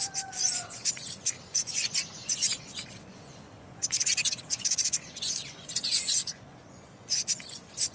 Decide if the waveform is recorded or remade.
remade